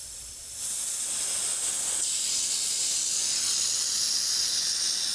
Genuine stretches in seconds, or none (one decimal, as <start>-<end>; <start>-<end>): 3.1-5.1